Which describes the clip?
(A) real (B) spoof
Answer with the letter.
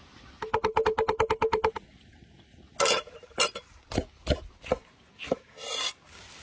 A